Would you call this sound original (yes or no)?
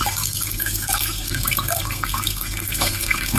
no